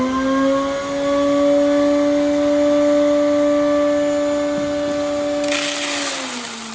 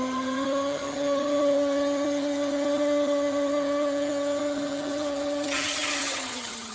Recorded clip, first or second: first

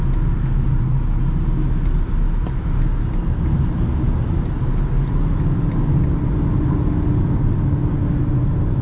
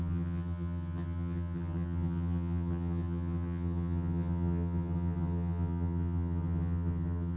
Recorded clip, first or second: first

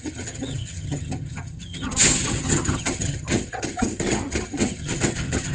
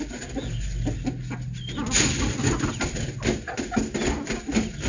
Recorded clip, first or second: second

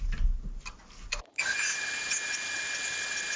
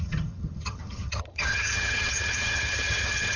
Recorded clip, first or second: first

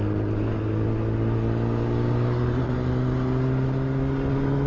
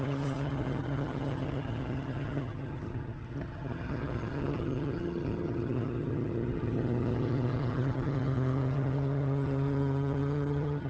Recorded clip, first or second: first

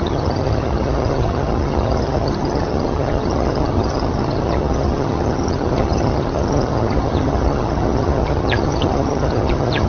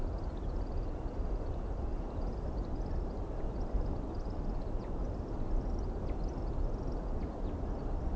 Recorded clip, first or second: second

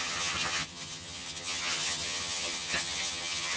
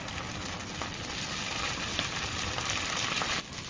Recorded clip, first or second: second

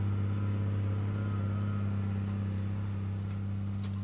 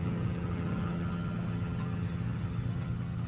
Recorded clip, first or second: first